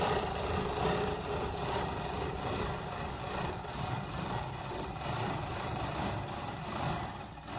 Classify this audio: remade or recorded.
remade